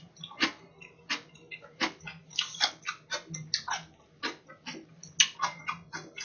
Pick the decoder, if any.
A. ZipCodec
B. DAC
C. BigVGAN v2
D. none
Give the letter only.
D